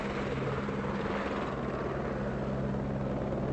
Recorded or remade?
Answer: recorded